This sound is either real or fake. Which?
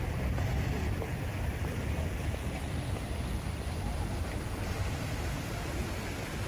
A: real